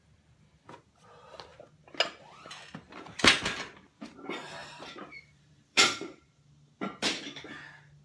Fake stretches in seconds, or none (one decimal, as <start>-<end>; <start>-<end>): 4.6-6.2